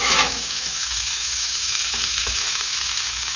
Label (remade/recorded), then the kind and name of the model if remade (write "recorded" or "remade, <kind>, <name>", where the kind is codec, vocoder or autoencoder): remade, autoencoder, DAC-VAE